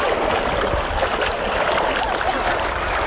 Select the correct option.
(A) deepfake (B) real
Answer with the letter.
B